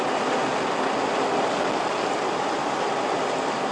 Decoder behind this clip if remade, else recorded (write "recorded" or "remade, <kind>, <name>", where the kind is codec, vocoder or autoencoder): recorded